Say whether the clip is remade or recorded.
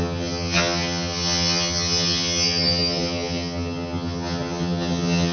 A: remade